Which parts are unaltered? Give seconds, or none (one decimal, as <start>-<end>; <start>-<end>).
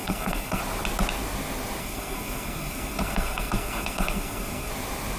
0.6-1.8; 4.7-5.2